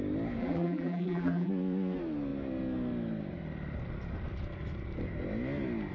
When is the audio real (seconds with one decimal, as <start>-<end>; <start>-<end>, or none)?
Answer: 0.0-0.4; 1.5-5.9